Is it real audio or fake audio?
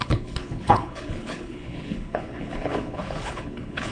fake